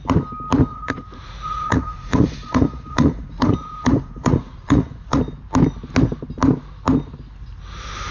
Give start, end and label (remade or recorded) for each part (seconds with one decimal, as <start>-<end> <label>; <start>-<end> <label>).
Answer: 0.0-0.7 recorded; 0.7-5.2 remade; 5.2-8.1 recorded